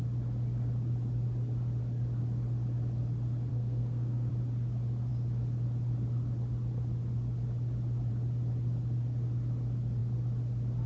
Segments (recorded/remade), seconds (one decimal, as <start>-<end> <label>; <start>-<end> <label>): 0.0-3.5 recorded; 3.5-4.3 remade; 4.3-10.9 recorded